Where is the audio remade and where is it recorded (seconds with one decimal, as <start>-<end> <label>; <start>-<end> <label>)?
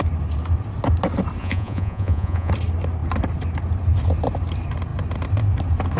0.0-1.4 recorded; 1.4-2.5 remade; 2.5-6.0 recorded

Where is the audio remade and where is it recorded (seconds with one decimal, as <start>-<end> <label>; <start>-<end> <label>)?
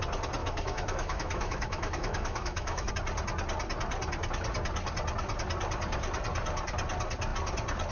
0.0-0.4 recorded; 0.4-2.9 remade; 2.9-7.9 recorded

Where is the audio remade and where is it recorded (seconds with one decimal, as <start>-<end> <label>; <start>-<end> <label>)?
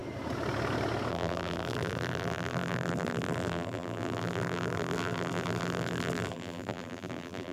0.0-1.1 recorded; 1.1-7.5 remade